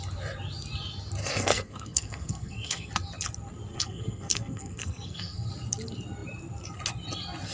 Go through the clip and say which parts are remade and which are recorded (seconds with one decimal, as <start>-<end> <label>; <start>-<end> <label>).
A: 0.0-1.2 recorded; 1.2-2.9 remade; 2.9-3.7 recorded; 3.7-5.5 remade; 5.5-7.5 recorded